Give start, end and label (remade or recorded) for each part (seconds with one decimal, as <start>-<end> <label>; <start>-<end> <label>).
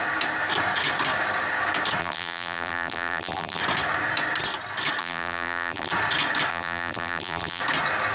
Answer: 0.0-2.0 recorded; 2.0-3.6 remade; 3.6-5.0 recorded; 5.0-5.9 remade; 5.9-6.5 recorded; 6.5-7.6 remade; 7.6-8.1 recorded